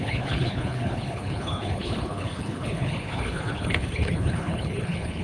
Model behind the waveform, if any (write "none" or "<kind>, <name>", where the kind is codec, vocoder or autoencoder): codec, HILCodec